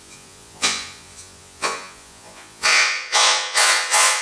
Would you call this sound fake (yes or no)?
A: yes